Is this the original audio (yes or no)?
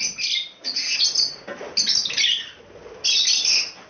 yes